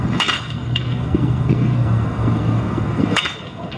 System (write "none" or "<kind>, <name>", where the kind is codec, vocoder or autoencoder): codec, SNAC